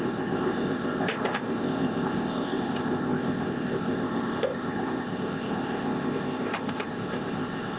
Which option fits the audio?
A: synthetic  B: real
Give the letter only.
A